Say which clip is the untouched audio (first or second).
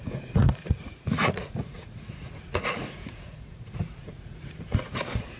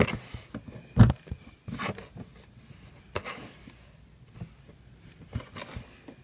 second